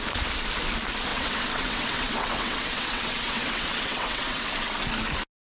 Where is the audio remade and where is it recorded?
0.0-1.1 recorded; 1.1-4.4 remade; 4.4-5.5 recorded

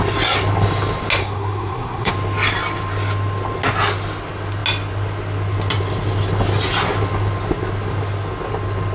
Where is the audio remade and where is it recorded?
0.0-1.2 recorded; 1.2-2.1 remade; 2.1-8.9 recorded

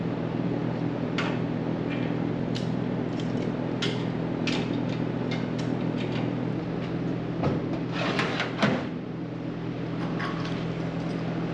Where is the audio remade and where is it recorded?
0.0-11.5 recorded

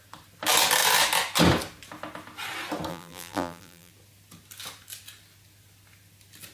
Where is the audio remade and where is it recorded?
0.0-2.9 recorded; 2.9-3.9 remade; 3.9-6.5 recorded

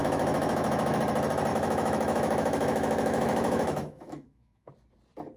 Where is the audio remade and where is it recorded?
0.0-1.0 remade; 1.0-1.5 recorded; 1.5-4.7 remade; 4.7-5.4 recorded